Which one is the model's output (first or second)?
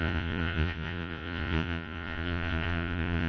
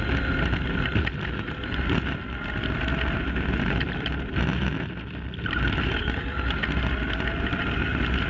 first